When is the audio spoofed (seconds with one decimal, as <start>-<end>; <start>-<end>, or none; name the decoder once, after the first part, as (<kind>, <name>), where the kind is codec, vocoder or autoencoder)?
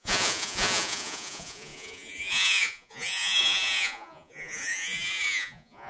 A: 0.0-5.9 (vocoder, Vocos)